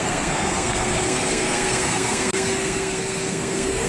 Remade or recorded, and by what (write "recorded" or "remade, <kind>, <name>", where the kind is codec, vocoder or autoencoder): remade, codec, SNAC